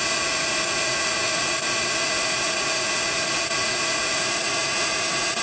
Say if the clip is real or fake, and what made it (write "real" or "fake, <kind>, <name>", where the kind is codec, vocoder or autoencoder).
fake, vocoder, Vocos